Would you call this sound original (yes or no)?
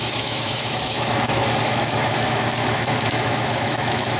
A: no